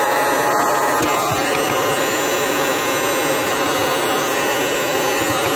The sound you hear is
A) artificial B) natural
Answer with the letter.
B